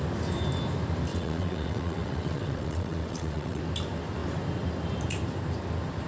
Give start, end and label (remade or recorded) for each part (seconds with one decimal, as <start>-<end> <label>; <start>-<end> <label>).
0.0-1.1 recorded; 1.1-3.6 remade; 3.6-6.1 recorded